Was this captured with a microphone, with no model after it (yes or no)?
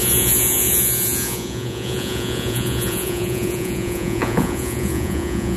no